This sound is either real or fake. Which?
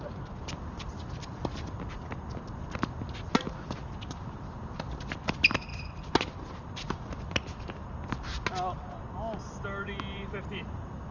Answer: real